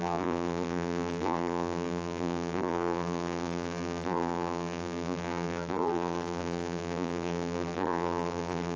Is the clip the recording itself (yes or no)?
no